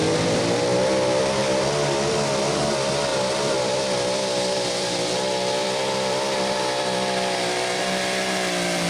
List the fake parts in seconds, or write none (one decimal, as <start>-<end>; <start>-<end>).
3.1-7.8